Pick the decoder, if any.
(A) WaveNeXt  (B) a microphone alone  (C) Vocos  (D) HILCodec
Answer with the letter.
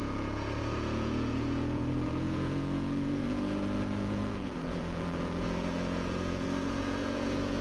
C